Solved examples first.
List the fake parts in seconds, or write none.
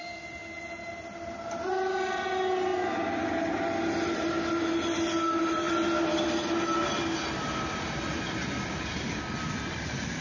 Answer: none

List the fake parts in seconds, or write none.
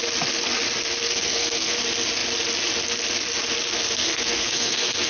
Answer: 1.1-1.7 (codec, SNAC); 4.0-5.1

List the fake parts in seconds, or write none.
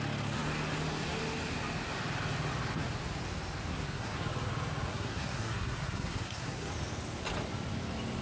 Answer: 3.7-4.2 (codec, SNAC); 4.9-6.7